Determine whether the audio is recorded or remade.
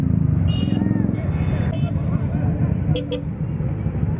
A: recorded